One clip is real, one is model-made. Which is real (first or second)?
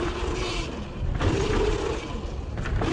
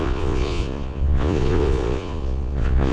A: first